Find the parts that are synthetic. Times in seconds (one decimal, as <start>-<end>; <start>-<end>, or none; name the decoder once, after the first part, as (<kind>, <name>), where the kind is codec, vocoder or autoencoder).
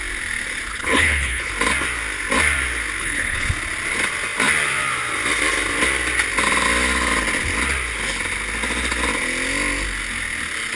0.7-1.5 (codec, HILCodec); 3.0-3.5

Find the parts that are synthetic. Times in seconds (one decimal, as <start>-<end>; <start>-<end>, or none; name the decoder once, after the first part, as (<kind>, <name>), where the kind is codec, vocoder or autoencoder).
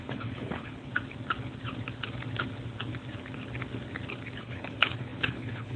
0.0-0.9 (codec, HILCodec); 4.4-5.8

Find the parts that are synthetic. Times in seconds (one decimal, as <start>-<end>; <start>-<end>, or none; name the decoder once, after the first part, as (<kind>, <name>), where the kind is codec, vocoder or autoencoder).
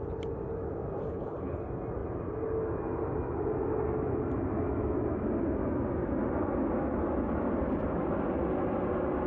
1.0-1.6 (codec, HILCodec)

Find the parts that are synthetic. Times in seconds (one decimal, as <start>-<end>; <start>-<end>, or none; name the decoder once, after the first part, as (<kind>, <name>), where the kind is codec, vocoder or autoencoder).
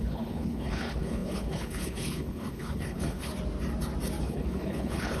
0.0-3.3 (codec, HILCodec); 4.2-5.2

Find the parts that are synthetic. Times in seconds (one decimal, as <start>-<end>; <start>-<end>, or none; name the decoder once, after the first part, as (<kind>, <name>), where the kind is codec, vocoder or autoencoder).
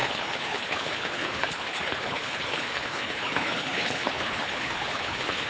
0.0-5.5 (codec, HILCodec)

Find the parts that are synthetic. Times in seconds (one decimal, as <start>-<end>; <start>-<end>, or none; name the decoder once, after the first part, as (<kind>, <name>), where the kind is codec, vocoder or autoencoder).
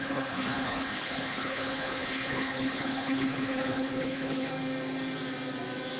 0.0-4.5 (codec, HILCodec)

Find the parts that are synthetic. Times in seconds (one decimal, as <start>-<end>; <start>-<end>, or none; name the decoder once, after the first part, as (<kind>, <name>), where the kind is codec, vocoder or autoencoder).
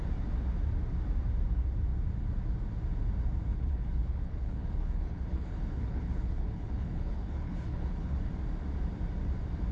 3.5-8.3 (codec, HILCodec)